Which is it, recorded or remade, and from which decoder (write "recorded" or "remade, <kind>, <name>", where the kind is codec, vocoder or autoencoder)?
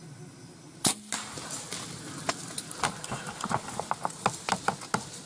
recorded